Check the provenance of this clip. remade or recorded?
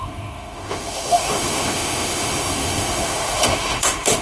remade